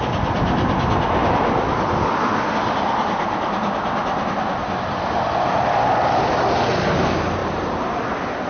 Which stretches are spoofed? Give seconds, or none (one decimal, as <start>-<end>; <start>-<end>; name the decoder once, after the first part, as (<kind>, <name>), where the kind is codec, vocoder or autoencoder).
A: 7.4-8.0 (vocoder, BigVGAN v2)